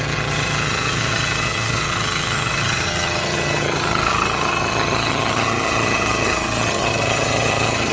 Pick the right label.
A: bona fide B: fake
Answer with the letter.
B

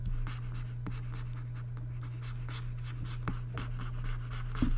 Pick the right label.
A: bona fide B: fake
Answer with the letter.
A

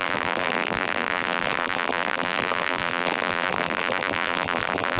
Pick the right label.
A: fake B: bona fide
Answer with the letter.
A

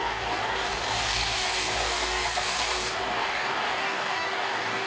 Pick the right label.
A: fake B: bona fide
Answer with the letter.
A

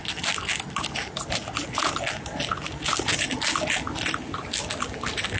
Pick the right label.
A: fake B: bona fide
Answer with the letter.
B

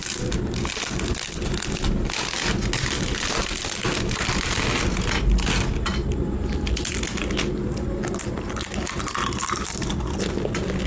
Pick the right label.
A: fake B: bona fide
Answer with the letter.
B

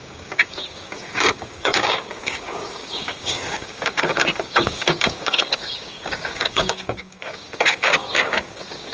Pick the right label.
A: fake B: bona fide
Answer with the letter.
A